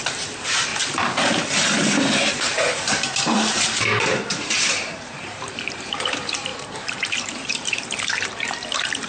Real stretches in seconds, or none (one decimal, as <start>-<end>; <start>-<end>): 0.7-2.3